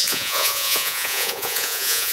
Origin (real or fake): fake